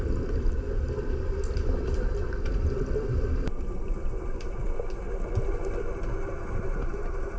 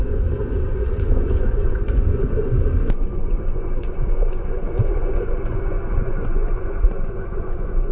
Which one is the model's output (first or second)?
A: second